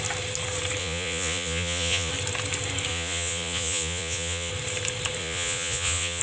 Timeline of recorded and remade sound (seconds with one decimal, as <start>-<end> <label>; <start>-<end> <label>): 0.0-0.8 recorded; 0.8-2.1 remade; 2.1-2.9 recorded; 2.9-4.5 remade; 4.5-5.2 recorded; 5.2-6.2 remade